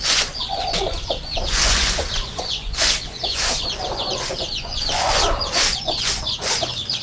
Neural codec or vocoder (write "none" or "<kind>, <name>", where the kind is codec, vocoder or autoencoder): vocoder, Vocos